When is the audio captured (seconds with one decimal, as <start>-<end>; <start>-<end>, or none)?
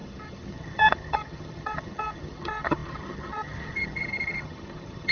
none